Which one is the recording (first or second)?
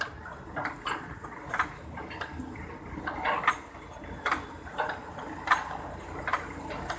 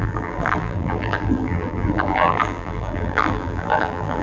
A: first